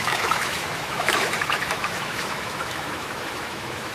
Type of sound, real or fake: fake